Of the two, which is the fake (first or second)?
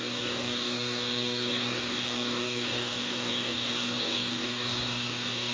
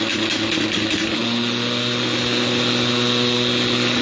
first